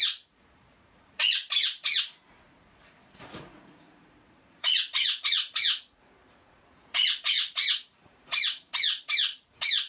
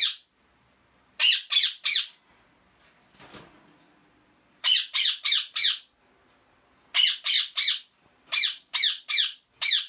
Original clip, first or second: second